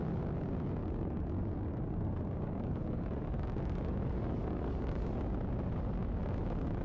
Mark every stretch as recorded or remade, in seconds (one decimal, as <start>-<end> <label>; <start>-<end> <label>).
0.0-0.8 recorded; 0.8-4.9 remade; 4.9-6.8 recorded